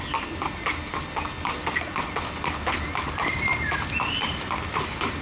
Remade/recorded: recorded